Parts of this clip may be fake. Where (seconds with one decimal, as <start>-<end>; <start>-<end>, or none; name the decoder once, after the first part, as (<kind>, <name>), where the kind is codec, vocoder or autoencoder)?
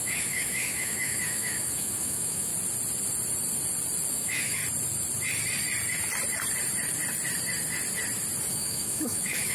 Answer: 0.0-2.5 (autoencoder, DAC-VAE); 4.1-4.6; 8.5-9.5